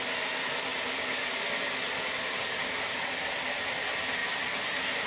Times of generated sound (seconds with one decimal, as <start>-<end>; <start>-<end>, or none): none